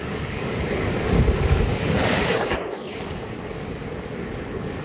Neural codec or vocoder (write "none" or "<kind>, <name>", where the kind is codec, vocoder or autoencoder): codec, DAC